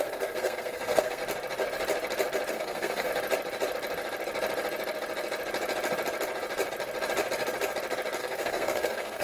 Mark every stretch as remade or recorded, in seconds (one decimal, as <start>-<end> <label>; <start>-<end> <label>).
0.0-1.2 remade; 1.2-2.5 recorded; 2.5-3.1 remade; 3.1-8.2 recorded; 8.2-9.2 remade